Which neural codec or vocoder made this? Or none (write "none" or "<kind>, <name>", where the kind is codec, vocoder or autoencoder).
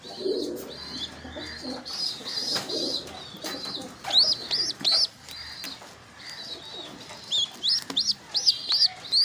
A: none